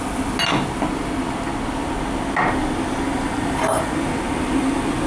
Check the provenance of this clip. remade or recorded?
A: recorded